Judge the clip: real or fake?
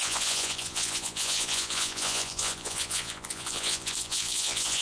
fake